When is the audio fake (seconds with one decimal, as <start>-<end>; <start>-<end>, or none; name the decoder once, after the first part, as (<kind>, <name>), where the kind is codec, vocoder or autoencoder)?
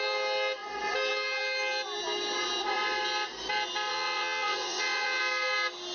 3.9-5.2 (vocoder, WaveNeXt)